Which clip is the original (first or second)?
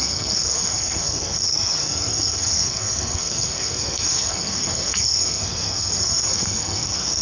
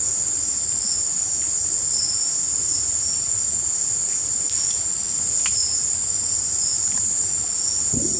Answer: second